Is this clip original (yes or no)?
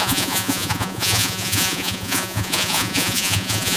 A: no